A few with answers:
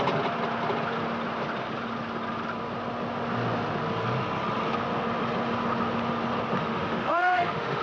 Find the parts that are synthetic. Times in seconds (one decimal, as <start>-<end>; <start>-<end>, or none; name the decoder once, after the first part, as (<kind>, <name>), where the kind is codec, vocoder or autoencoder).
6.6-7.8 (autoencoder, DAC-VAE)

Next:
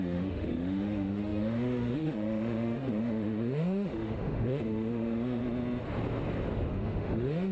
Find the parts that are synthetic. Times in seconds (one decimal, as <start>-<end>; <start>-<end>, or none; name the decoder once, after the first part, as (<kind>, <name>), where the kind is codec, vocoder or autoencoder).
0.0-5.4 (autoencoder, DAC-VAE); 6.7-7.5

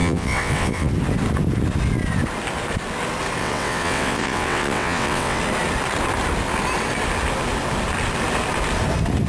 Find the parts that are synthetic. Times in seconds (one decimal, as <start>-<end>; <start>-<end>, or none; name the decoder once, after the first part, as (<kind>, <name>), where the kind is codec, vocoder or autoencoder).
0.0-0.9 (vocoder, WaveNeXt); 3.4-5.4

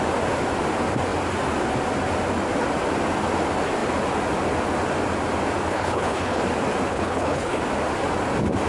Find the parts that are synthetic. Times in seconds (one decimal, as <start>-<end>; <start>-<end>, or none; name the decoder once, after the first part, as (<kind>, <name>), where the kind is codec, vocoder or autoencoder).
5.7-6.4 (codec, HILCodec); 6.9-7.6

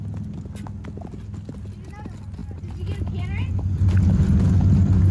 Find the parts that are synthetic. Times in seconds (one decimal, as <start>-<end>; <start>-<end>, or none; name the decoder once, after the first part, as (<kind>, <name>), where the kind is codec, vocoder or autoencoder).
none

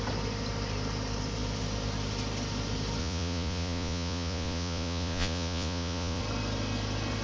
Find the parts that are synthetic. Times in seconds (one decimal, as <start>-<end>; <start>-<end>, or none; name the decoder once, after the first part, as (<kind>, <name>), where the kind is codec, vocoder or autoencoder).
3.0-6.2 (vocoder, Vocos)